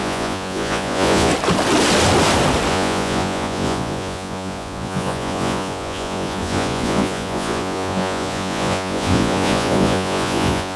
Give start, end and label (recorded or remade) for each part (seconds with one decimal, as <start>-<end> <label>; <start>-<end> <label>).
0.0-1.3 remade; 1.3-2.7 recorded; 2.7-10.8 remade